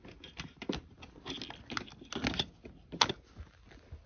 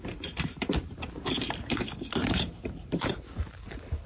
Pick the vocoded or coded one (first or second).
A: second